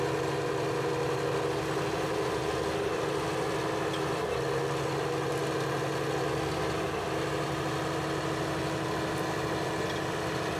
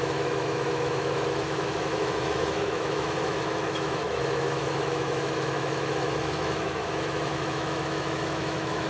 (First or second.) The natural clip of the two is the first